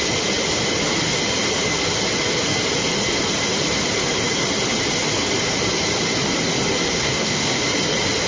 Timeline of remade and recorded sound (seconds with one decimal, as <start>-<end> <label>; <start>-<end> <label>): 0.0-7.0 recorded; 7.0-7.6 remade; 7.6-8.3 recorded